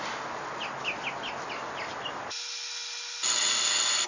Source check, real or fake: real